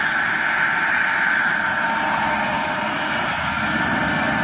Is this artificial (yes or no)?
no